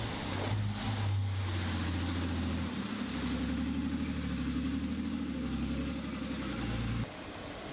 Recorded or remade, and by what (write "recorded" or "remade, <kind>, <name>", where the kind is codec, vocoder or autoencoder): recorded